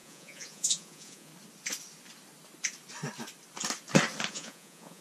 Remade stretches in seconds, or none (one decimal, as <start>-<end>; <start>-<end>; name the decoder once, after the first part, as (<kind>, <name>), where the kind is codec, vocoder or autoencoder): 0.0-1.3 (vocoder, Vocos); 4.3-5.0